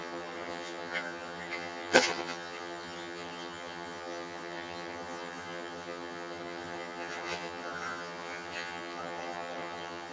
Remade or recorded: remade